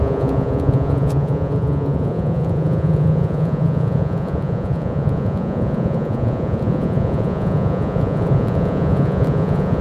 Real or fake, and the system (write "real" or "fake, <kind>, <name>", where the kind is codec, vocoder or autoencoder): fake, vocoder, Vocos